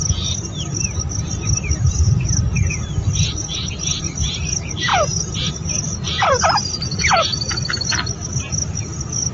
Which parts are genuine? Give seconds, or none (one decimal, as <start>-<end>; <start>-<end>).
0.0-9.3

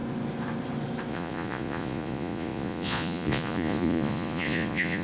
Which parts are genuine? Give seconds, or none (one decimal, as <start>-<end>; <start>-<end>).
0.0-1.1

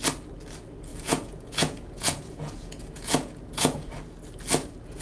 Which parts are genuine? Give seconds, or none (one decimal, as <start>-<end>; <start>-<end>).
0.0-0.9; 3.9-5.0